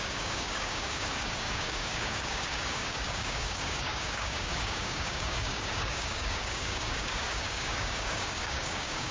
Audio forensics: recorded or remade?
remade